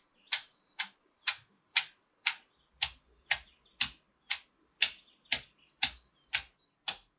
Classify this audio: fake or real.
real